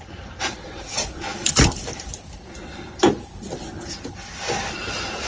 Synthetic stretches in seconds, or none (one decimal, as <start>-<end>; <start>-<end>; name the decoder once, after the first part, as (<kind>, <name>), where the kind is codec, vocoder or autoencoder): none